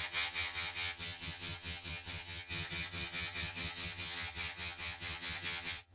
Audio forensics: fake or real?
fake